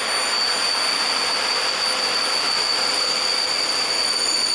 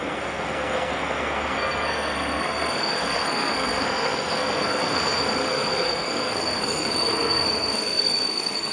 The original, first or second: first